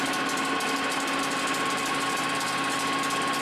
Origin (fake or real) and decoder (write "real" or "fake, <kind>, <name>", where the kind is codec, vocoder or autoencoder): real